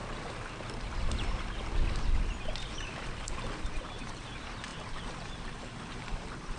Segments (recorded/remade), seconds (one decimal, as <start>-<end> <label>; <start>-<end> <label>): 0.0-3.6 recorded; 3.6-6.6 remade